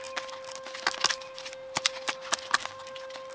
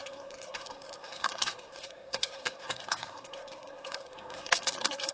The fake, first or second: second